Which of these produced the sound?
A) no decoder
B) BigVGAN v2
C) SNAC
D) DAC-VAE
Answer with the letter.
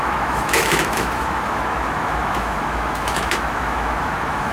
D